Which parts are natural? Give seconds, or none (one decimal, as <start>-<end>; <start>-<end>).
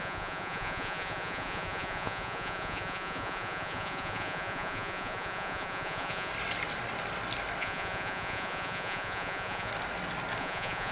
6.3-7.6; 9.7-10.4